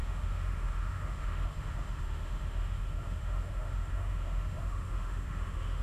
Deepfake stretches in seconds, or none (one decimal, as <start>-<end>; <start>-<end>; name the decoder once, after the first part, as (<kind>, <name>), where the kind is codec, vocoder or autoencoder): 0.0-5.8 (autoencoder, DAC-VAE)